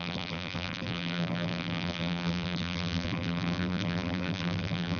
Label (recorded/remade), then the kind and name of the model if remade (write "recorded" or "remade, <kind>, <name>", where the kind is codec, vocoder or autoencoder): remade, vocoder, BigVGAN v2